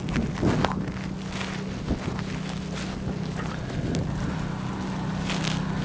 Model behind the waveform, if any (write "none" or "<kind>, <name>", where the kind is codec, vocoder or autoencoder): none